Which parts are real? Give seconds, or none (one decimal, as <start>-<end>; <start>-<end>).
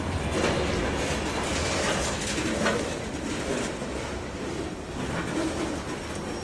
0.0-6.4